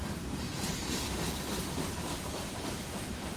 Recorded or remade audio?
remade